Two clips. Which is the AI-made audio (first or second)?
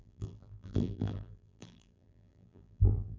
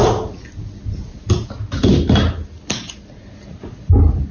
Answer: first